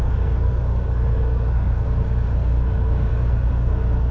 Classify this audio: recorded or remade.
remade